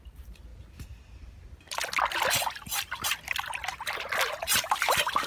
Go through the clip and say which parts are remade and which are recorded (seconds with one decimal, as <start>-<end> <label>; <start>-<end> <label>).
0.0-5.3 recorded